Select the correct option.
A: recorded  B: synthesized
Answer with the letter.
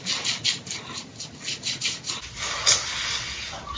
A